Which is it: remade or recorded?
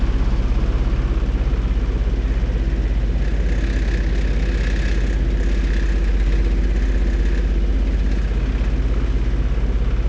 recorded